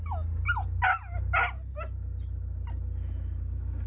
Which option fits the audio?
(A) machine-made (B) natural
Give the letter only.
B